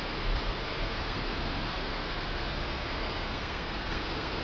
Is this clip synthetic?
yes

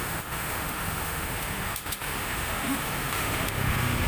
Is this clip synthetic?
yes